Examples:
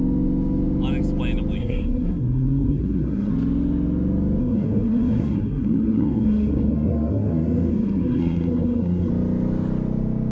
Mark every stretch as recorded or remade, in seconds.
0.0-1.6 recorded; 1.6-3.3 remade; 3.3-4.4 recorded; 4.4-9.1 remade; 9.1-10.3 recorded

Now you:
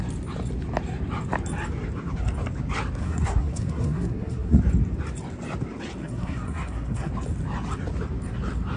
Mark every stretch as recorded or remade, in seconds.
0.0-3.0 recorded; 3.0-4.6 remade; 4.6-6.0 recorded; 6.0-7.1 remade; 7.1-8.8 recorded

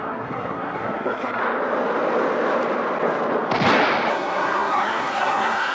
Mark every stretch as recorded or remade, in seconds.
0.0-1.4 remade; 1.4-4.1 recorded; 4.1-5.7 remade

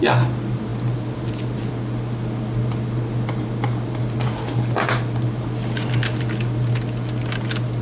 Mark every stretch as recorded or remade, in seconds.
0.0-7.8 recorded